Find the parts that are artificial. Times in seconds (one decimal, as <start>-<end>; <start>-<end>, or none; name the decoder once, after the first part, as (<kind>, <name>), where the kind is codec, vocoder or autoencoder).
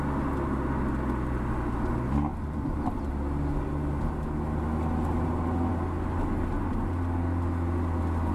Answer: 2.3-3.1 (vocoder, BigVGAN v2)